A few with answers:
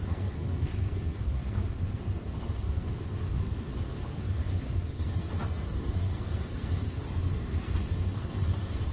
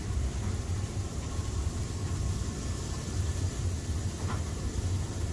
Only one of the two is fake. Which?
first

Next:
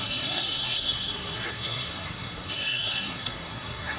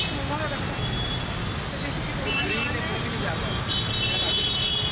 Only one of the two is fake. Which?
first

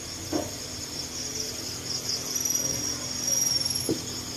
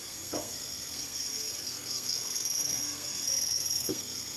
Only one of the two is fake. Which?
second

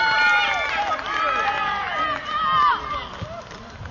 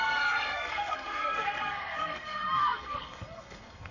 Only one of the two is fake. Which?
second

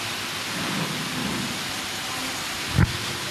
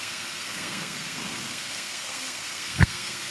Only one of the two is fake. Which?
second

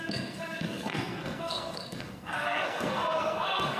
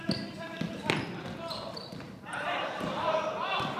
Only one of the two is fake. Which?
first